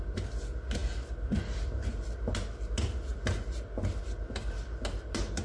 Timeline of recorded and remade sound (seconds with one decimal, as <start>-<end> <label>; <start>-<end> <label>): 0.0-5.4 recorded